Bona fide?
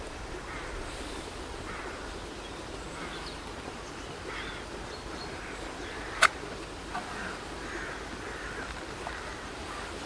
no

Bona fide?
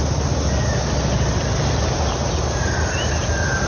yes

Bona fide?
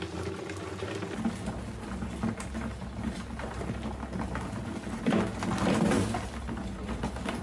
yes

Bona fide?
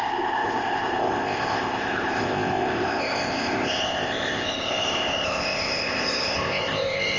no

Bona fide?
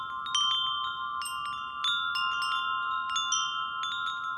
yes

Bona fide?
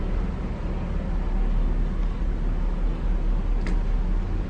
yes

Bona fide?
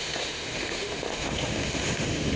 no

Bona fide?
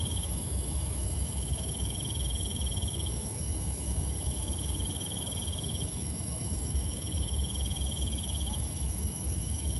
no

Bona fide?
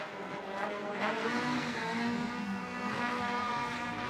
no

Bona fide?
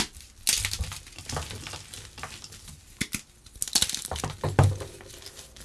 yes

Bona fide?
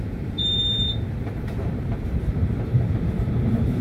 no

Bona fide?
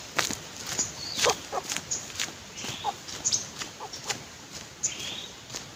no